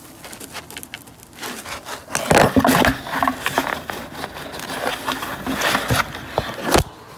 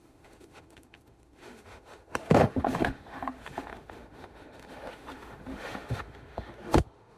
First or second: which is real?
first